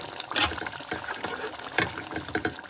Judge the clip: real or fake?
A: real